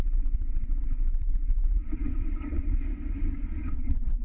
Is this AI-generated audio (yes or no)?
yes